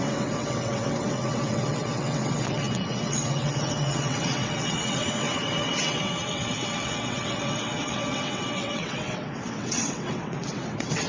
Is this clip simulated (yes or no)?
yes